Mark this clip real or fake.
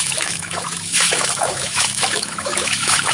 fake